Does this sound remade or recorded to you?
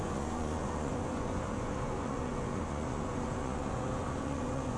remade